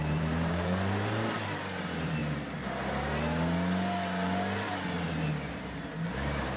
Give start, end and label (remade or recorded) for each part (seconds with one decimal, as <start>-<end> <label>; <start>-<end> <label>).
0.0-2.2 remade; 2.2-5.5 recorded; 5.5-6.6 remade